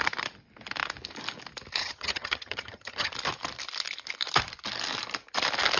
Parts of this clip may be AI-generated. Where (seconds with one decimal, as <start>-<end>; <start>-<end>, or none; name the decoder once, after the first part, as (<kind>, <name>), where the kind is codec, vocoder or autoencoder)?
1.8-3.1 (vocoder, HiFi-GAN)